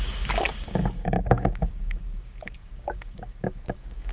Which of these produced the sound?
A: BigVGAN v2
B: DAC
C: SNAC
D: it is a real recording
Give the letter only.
B